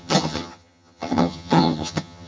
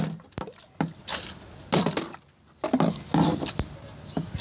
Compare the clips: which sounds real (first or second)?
second